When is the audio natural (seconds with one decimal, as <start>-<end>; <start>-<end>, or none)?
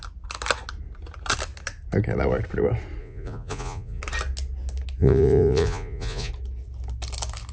0.0-3.0; 4.0-5.0; 6.3-7.5